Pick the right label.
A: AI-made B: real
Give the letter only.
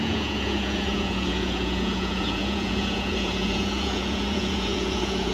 A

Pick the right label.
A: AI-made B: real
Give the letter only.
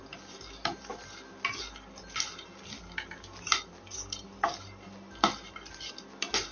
B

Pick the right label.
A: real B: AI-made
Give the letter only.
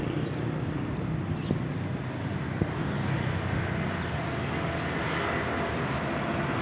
A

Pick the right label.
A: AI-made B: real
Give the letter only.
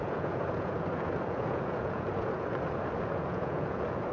A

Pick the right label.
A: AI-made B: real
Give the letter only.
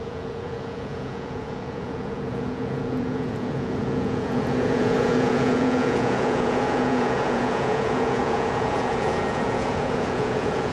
A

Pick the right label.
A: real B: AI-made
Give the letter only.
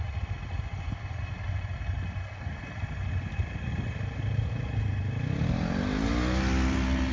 A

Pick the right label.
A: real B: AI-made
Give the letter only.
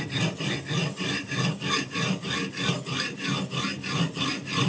A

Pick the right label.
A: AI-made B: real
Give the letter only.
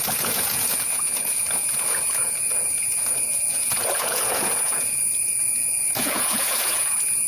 A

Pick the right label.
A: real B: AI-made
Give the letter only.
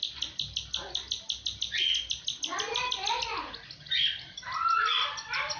A